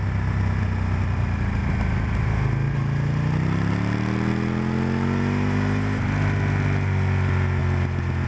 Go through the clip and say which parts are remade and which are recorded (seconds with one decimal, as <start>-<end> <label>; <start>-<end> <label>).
0.0-8.3 recorded